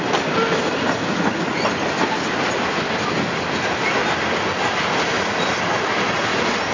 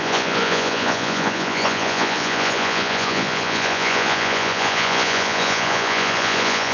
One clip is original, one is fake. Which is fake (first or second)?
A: second